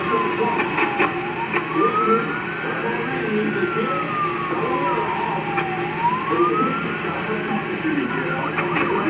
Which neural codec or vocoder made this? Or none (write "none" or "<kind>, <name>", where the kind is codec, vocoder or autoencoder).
none